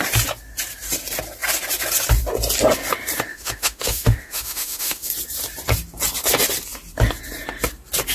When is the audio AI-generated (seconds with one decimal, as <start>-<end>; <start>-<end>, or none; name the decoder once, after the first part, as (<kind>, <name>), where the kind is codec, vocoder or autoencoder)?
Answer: 3.3-5.1 (autoencoder, DAC-VAE)